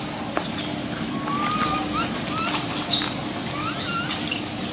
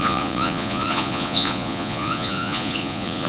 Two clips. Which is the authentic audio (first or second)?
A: first